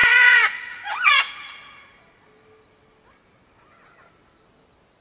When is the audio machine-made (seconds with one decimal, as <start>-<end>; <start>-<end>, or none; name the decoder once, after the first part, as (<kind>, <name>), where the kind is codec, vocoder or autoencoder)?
0.0-2.0 (vocoder, Vocos)